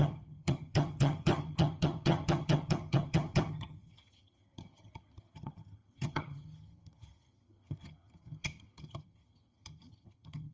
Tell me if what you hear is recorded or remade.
remade